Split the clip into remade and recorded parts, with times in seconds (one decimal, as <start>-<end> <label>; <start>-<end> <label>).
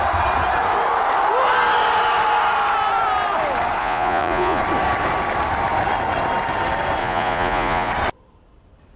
0.0-3.8 recorded; 3.8-4.6 remade; 4.6-7.0 recorded; 7.0-7.9 remade; 7.9-9.0 recorded